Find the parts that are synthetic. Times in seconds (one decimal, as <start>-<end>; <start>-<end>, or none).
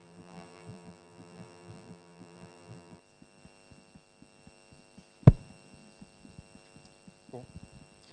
0.0-3.0